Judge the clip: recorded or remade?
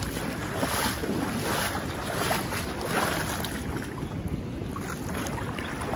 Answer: recorded